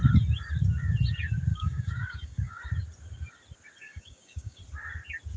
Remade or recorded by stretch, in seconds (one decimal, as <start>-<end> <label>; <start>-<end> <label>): 0.0-1.5 recorded; 1.5-2.6 remade; 2.6-3.8 recorded; 3.8-4.6 remade; 4.6-5.4 recorded